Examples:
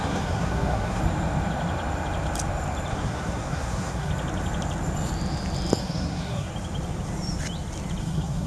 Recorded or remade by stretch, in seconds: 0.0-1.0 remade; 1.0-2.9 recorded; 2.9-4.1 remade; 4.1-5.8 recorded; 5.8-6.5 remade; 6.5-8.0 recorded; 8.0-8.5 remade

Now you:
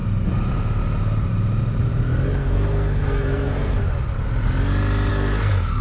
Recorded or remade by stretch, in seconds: 0.0-2.4 recorded; 2.4-3.8 remade; 3.8-5.1 recorded; 5.1-5.8 remade

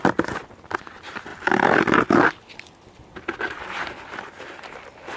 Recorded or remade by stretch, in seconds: 0.0-5.2 recorded

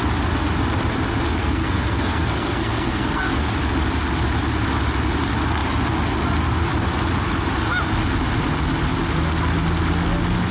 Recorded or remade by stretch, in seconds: 0.0-1.4 recorded; 1.4-3.5 remade; 3.5-10.5 recorded

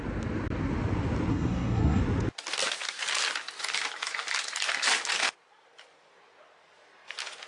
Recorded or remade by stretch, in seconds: 0.0-1.3 recorded; 1.3-2.0 remade; 2.0-7.5 recorded